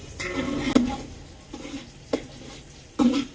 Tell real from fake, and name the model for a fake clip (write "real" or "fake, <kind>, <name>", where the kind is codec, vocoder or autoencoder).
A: real